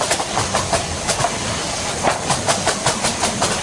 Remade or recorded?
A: recorded